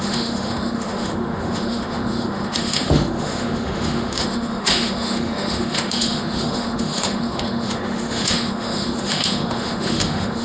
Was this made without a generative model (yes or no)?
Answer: no